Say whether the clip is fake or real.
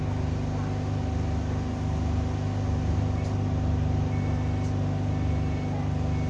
real